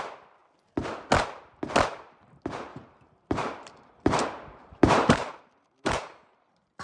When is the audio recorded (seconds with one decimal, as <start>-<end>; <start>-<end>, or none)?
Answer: 0.0-2.7